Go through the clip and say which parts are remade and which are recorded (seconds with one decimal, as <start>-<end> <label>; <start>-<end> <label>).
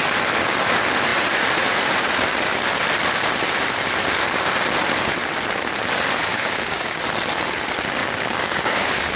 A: 0.0-6.3 recorded; 6.3-7.0 remade; 7.0-8.0 recorded; 8.0-9.2 remade